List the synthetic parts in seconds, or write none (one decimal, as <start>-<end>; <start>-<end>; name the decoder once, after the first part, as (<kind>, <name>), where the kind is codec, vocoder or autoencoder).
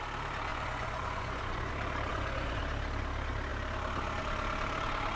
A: 0.5-1.7 (vocoder, Vocos); 2.1-2.6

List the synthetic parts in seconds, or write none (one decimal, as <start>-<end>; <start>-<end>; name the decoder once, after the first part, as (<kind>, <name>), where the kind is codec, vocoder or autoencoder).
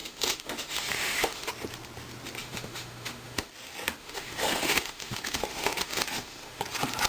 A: 0.0-1.5 (autoencoder, DAC-VAE); 2.4-3.5; 4.0-6.6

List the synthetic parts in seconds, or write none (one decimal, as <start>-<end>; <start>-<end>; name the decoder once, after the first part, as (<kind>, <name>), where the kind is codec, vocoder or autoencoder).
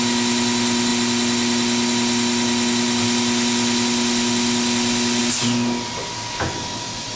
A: none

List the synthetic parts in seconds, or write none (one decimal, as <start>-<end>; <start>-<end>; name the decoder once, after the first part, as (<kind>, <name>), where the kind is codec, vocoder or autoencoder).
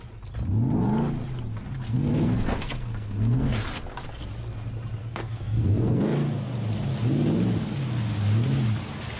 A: 1.9-3.5 (codec, SNAC); 5.0-6.0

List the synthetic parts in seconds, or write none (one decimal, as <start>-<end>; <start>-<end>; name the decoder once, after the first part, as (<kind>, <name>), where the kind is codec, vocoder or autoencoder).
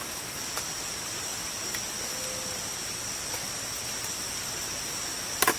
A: 1.3-1.8 (vocoder, BigVGAN v2)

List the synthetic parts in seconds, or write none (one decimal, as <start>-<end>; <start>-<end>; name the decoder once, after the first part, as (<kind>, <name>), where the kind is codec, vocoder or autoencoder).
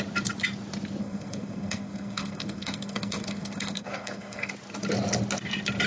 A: 1.0-4.5 (codec, SNAC)